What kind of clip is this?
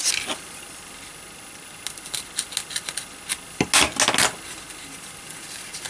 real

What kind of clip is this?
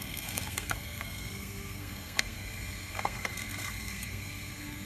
fake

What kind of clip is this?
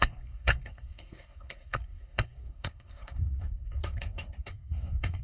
fake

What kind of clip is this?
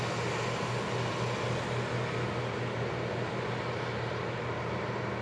real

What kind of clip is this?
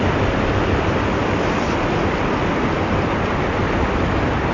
real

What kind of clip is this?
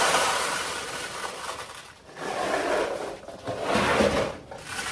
real